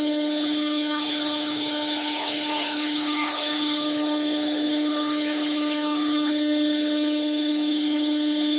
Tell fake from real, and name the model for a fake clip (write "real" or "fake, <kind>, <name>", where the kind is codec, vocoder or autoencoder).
fake, codec, HILCodec